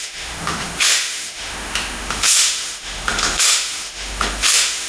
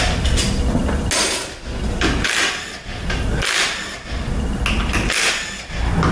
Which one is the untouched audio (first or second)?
second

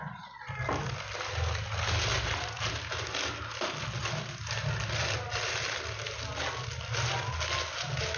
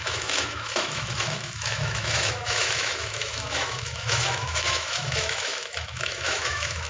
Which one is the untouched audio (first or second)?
first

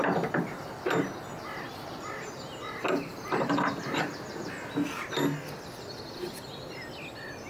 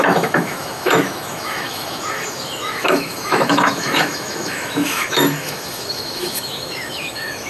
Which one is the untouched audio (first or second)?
first